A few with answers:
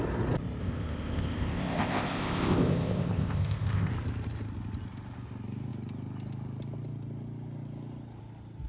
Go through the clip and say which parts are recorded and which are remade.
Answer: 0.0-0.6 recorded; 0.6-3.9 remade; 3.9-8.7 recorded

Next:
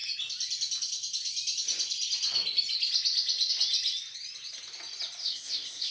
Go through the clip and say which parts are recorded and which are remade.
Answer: 0.0-5.2 recorded; 5.2-5.9 remade

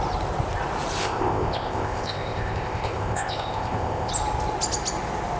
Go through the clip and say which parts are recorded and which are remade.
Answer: 0.0-1.0 recorded; 1.0-4.1 remade; 4.1-5.4 recorded

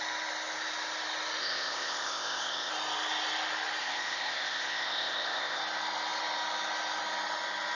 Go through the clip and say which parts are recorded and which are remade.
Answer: 0.0-1.4 recorded; 1.4-2.7 remade; 2.7-3.8 recorded; 3.8-5.6 remade; 5.6-7.7 recorded

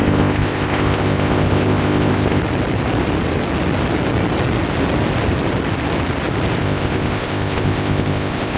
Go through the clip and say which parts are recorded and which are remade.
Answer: 0.0-2.4 remade; 2.4-6.6 recorded; 6.6-8.6 remade

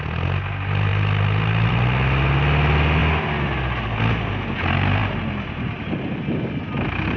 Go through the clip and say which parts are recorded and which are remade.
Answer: 0.0-7.2 recorded